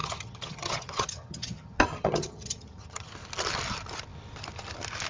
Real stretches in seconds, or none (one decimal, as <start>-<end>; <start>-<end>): 3.1-5.1